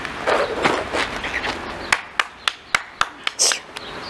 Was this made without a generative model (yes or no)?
yes